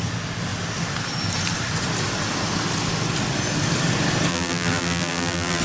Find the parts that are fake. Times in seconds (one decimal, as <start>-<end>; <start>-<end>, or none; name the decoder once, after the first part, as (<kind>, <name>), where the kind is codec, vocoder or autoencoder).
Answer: 4.3-5.6 (vocoder, BigVGAN v2)

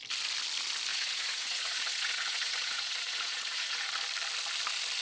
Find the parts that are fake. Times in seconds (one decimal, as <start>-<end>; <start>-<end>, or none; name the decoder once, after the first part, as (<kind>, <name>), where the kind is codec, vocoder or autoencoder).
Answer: 0.9-3.9 (vocoder, Vocos)

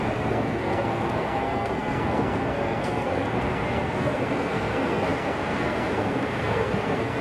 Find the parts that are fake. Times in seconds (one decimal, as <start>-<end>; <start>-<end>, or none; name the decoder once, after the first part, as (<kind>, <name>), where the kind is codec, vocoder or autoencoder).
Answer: 0.0-7.2 (codec, SNAC)

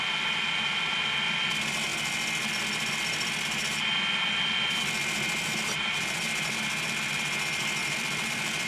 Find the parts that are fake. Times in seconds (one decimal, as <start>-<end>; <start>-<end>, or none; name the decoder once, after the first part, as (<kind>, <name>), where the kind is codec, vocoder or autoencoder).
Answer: 7.8-8.7 (vocoder, BigVGAN v2)

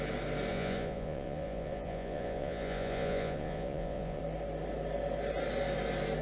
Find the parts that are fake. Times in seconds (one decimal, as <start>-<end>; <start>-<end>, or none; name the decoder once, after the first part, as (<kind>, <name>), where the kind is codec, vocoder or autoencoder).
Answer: 0.5-4.2 (vocoder, Vocos)

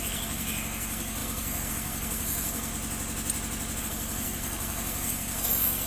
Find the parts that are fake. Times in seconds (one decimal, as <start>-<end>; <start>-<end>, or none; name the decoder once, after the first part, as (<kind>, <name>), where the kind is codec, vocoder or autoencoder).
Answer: 0.0-2.7 (codec, SNAC); 3.8-5.9